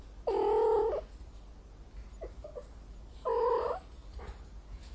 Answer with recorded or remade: recorded